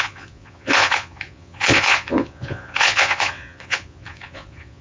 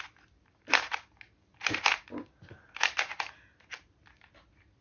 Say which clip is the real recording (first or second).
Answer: second